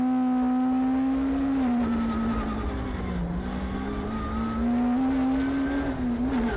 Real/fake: real